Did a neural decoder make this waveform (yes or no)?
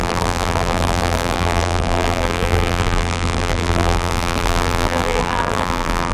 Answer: yes